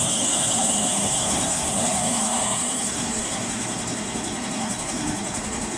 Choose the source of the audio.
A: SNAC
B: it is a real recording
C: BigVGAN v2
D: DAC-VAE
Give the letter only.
A